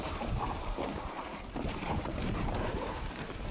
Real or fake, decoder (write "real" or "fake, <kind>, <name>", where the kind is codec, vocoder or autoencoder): fake, vocoder, BigVGAN v2